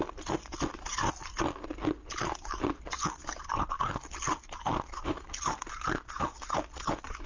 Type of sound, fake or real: real